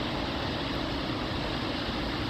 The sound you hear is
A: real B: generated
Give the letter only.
A